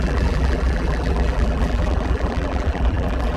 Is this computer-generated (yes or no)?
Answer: yes